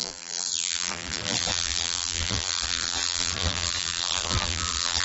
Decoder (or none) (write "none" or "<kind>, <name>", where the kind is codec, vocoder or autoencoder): vocoder, BigVGAN v2